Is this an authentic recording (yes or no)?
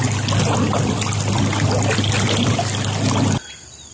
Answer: yes